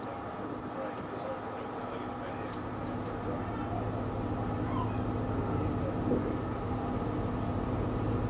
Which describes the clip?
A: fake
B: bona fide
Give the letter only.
B